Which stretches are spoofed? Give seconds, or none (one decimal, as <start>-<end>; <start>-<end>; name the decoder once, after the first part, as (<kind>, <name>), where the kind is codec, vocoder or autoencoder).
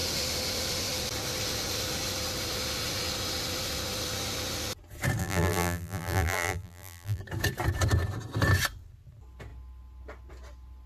5.2-7.2 (vocoder, BigVGAN v2)